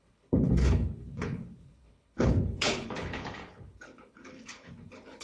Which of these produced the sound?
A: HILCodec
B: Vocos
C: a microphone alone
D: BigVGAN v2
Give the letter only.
A